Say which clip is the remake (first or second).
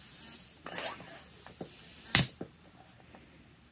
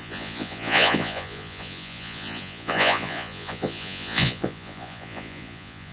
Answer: second